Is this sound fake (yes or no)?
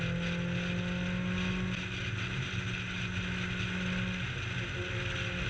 no